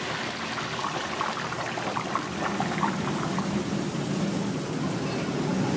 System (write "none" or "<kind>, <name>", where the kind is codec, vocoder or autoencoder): none